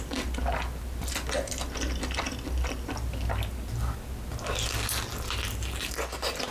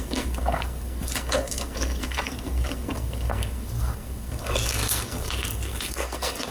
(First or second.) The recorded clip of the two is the first